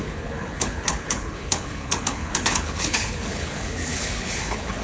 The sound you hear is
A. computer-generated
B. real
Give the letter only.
A